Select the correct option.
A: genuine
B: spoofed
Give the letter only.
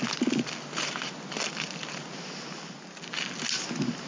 A